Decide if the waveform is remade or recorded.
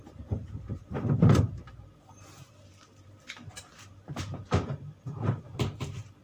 remade